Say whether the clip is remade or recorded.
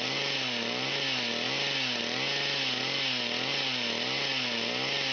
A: recorded